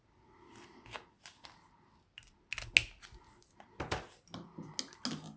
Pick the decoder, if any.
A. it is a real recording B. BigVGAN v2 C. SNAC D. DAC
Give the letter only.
A